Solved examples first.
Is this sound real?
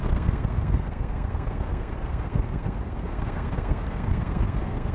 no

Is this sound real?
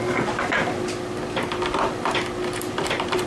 yes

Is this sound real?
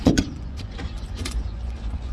no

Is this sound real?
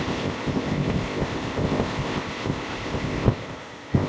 no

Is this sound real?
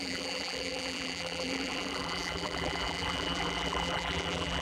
no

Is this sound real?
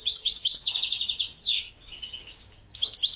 no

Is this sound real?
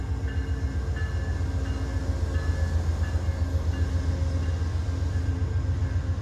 yes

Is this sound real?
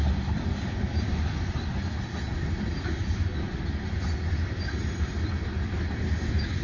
yes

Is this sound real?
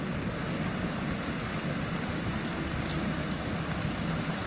yes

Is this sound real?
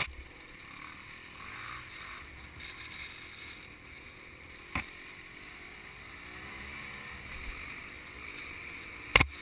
yes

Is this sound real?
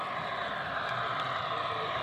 no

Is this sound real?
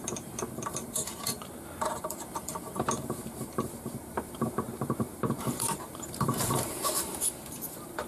no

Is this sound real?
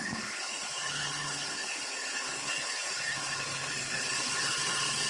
no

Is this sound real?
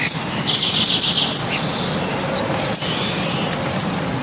yes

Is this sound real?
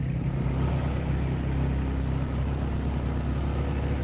yes